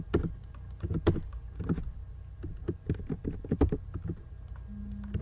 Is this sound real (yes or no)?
yes